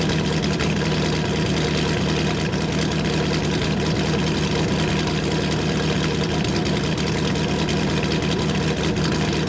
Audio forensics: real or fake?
real